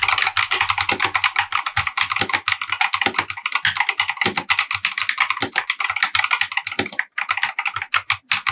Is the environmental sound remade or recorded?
recorded